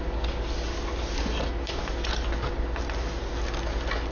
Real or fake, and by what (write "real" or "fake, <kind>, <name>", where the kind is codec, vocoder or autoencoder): real